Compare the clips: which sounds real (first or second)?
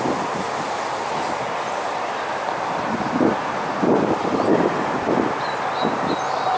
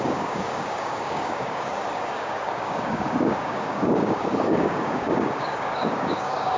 first